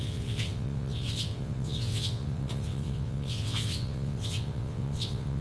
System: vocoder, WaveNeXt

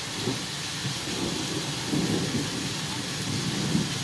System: none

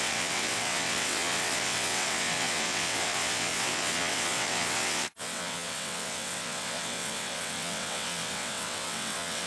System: vocoder, WaveNeXt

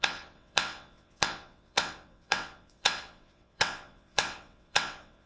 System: vocoder, WaveNeXt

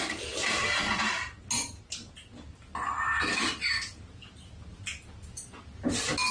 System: none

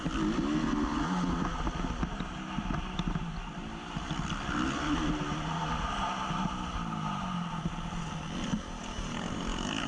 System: none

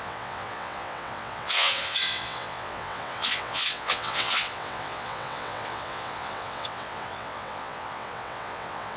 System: vocoder, WaveNeXt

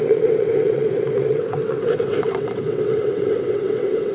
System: vocoder, WaveNeXt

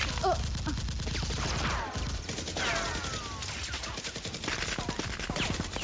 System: none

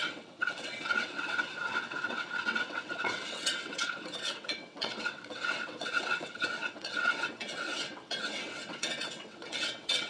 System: vocoder, WaveNeXt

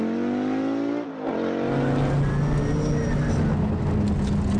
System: none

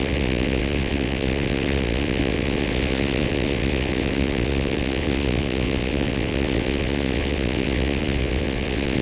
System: vocoder, WaveNeXt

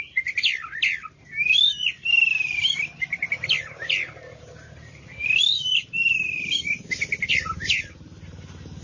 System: none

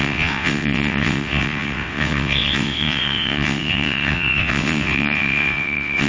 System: vocoder, WaveNeXt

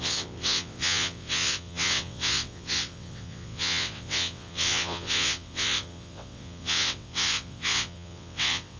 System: vocoder, WaveNeXt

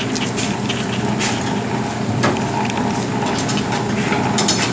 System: none